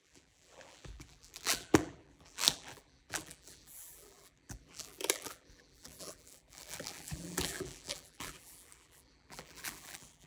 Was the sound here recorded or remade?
remade